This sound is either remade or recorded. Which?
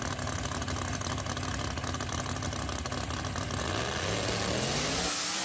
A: recorded